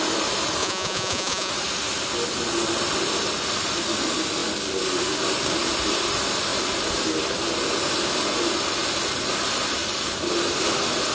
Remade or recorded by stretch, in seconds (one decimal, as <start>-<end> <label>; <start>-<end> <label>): 0.0-0.6 recorded; 0.6-1.5 remade; 1.5-11.1 recorded